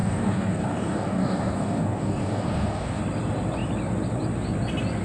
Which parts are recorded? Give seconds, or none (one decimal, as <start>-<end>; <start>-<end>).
3.0-5.0